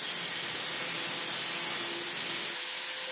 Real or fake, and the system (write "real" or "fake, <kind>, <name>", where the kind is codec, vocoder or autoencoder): real